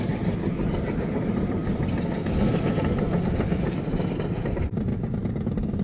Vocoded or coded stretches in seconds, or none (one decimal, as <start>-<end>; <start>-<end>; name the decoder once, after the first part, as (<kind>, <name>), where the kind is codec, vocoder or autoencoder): 0.0-1.6 (vocoder, BigVGAN v2); 3.6-4.9